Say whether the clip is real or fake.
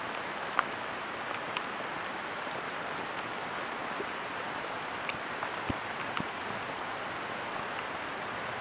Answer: real